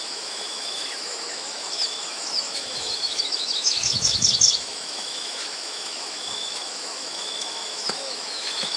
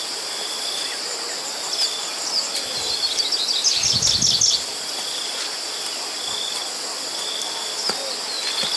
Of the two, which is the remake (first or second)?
first